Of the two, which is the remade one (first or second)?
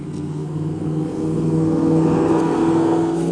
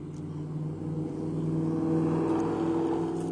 first